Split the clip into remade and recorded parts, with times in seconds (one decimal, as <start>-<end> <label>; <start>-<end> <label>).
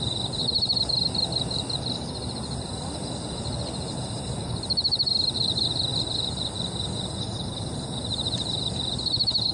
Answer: 0.0-9.5 recorded